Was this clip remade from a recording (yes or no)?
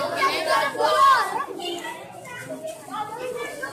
no